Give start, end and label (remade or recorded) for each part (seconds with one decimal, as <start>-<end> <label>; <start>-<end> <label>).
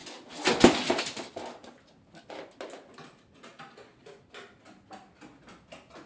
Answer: 0.0-6.1 recorded